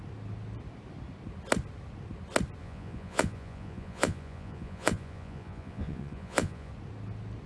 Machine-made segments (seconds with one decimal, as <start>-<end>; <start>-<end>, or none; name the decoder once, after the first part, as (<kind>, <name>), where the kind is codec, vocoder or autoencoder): 2.6-6.7 (vocoder, Vocos)